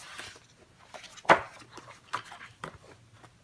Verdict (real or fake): real